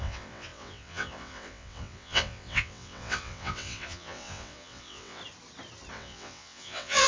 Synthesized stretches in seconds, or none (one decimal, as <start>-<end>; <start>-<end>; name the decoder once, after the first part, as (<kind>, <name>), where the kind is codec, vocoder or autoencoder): 0.0-5.2 (vocoder, WaveNeXt); 5.9-7.1